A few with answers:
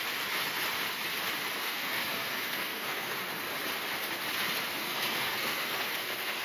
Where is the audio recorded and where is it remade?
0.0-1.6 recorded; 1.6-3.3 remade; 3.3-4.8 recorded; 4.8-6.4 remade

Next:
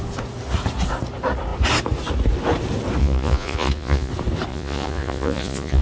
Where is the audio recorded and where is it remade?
0.0-3.0 recorded; 3.0-4.1 remade; 4.1-4.5 recorded; 4.5-5.8 remade

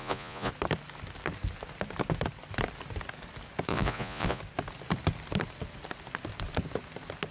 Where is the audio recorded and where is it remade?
0.0-0.5 remade; 0.5-3.7 recorded; 3.7-4.4 remade; 4.4-7.3 recorded

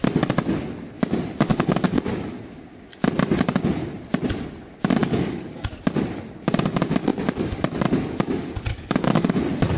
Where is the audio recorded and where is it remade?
0.0-1.5 recorded; 1.5-2.0 remade; 2.0-5.0 recorded; 5.0-5.7 remade; 5.7-8.7 recorded; 8.7-9.3 remade; 9.3-9.8 recorded